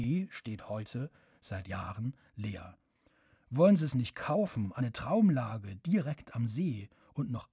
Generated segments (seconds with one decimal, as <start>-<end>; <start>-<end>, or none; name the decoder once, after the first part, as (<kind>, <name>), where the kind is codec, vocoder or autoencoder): 0.0-1.7 (codec, ZipCodec); 4.2-4.8